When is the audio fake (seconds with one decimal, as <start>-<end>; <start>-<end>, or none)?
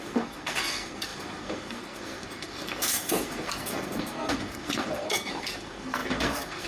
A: 0.0-6.7